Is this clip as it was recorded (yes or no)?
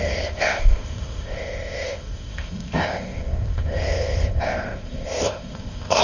no